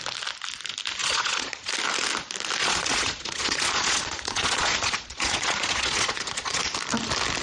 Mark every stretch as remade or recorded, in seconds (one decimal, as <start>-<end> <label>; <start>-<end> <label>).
0.0-1.0 recorded; 1.0-1.7 remade; 1.7-2.6 recorded; 2.6-6.6 remade; 6.6-7.4 recorded